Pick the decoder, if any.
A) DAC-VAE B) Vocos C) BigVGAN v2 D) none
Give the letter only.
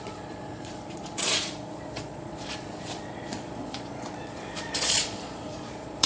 B